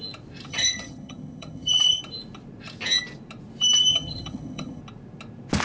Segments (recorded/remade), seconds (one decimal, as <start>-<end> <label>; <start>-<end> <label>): 0.0-0.5 recorded; 0.5-2.0 remade; 2.0-3.9 recorded; 3.9-4.8 remade; 4.8-5.6 recorded